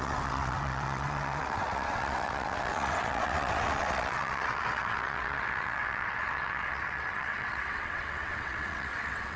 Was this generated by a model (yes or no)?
yes